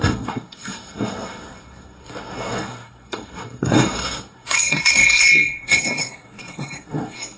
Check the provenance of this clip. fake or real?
fake